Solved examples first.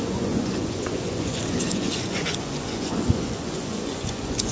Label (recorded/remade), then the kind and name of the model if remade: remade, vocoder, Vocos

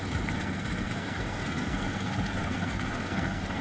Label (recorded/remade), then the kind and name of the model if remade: remade, codec, SNAC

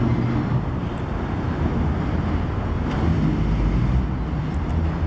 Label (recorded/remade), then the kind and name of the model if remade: recorded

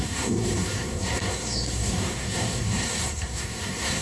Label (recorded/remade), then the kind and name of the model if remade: remade, codec, SNAC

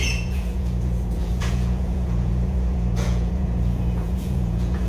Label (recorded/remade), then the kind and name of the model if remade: remade, vocoder, Vocos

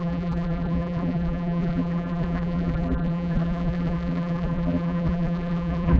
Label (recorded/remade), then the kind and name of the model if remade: remade, vocoder, BigVGAN v2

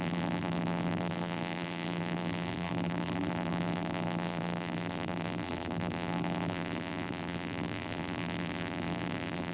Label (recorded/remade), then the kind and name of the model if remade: remade, vocoder, BigVGAN v2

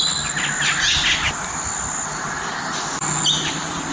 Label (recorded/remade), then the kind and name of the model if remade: recorded